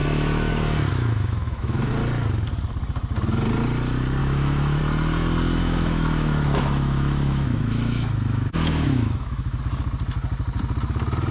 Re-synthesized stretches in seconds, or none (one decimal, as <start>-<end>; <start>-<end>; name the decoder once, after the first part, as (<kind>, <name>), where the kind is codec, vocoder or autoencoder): 0.0-0.5 (autoencoder, DAC-VAE); 0.9-1.9; 4.2-4.8; 5.6-9.6

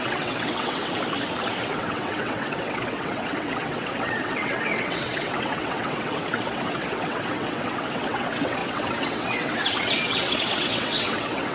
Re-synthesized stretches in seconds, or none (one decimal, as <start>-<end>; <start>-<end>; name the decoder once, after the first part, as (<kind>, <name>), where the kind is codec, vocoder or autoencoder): 0.0-0.8 (vocoder, WaveNeXt); 1.6-11.5